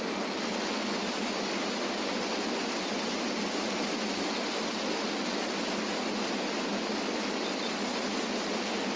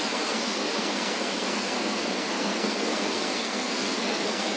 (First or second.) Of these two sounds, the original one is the first